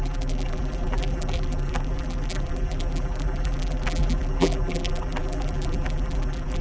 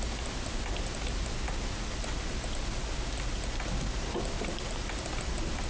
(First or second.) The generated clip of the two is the first